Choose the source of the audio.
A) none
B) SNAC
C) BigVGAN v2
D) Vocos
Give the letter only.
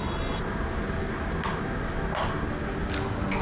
A